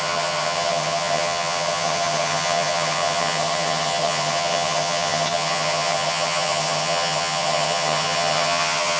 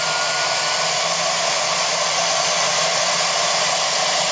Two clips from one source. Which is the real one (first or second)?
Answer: second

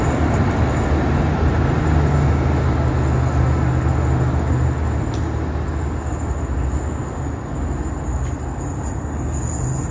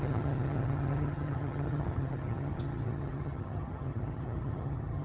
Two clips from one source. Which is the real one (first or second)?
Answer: first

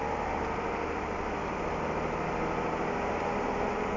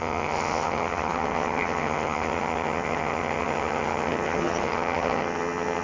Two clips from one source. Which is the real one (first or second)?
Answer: first